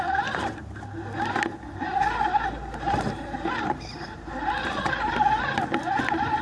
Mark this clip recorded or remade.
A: recorded